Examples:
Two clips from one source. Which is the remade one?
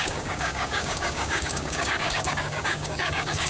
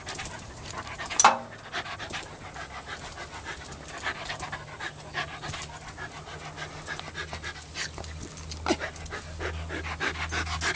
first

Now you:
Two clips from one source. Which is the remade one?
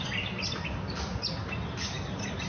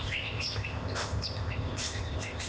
second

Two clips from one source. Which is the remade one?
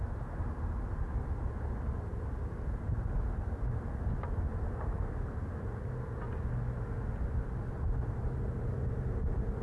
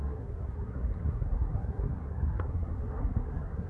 second